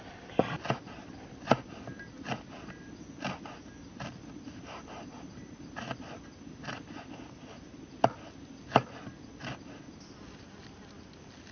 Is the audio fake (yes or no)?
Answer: no